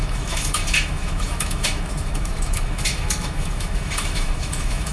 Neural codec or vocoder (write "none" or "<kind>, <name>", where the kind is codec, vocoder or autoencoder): autoencoder, DAC-VAE